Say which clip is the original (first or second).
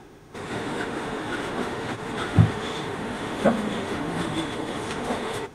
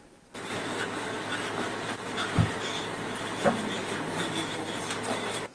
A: second